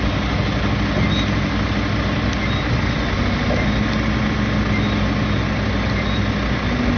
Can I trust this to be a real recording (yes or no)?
yes